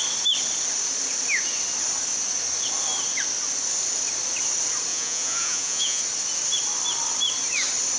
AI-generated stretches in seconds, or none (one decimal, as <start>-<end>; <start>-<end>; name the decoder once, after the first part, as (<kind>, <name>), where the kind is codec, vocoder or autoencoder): 4.9-6.0 (vocoder, Vocos)